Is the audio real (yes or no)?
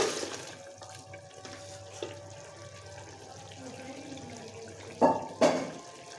yes